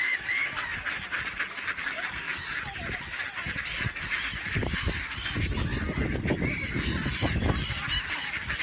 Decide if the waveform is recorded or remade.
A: recorded